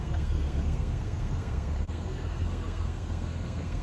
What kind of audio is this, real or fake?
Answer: fake